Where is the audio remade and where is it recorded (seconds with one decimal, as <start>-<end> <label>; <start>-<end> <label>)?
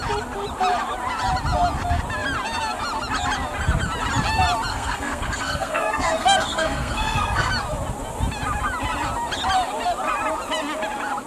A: 0.0-4.7 recorded; 4.7-7.5 remade; 7.5-11.3 recorded